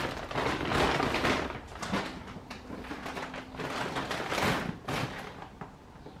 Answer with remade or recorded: recorded